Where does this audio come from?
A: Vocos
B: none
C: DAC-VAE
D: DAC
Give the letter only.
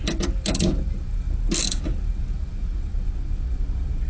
B